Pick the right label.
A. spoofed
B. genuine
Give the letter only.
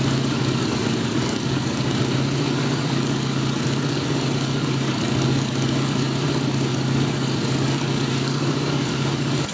A